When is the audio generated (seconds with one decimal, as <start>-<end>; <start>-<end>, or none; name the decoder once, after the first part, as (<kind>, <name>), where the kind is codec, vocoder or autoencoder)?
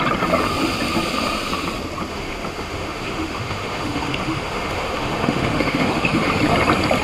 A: 2.1-6.3 (autoencoder, DAC-VAE)